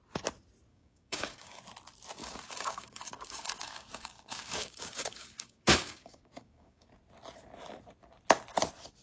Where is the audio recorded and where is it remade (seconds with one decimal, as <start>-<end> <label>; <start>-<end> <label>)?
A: 0.0-0.7 recorded; 0.7-1.6 remade; 1.6-2.2 recorded; 2.2-6.9 remade; 6.9-9.0 recorded